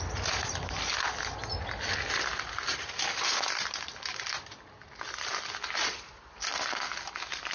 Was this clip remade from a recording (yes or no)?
no